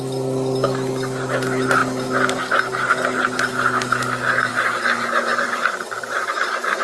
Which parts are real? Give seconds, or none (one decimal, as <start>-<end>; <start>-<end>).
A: 0.0-5.3